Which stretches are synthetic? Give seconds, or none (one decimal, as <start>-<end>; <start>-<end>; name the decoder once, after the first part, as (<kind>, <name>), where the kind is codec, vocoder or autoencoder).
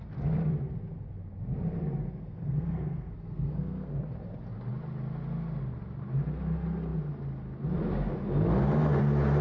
2.2-4.0 (codec, SNAC)